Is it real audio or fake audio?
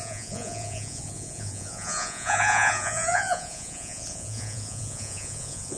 fake